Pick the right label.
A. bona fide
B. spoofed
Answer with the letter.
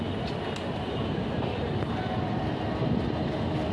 A